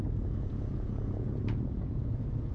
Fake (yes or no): yes